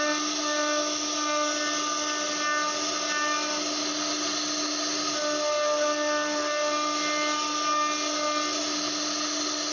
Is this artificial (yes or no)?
no